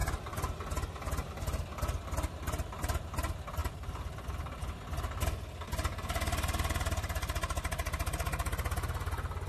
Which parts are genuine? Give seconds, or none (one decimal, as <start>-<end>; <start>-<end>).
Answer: 0.6-3.6; 4.3-9.5